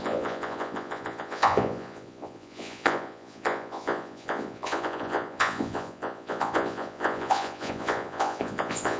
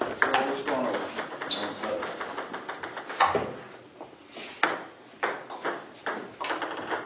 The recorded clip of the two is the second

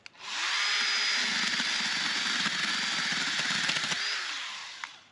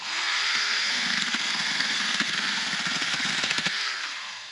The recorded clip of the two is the first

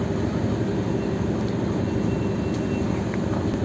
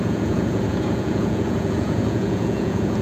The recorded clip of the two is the first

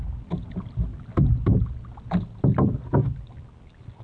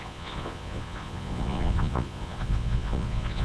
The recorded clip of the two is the first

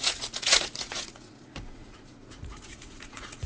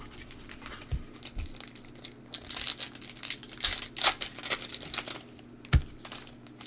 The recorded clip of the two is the second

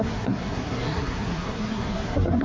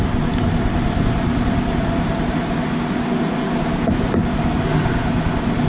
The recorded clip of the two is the second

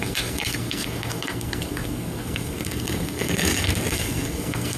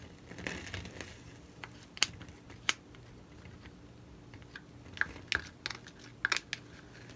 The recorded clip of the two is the second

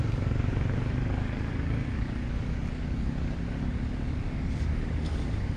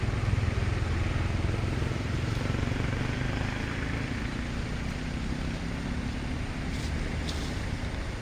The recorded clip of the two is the second